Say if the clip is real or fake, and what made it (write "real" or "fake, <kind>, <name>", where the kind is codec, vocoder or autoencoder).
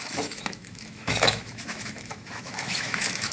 fake, autoencoder, DAC-VAE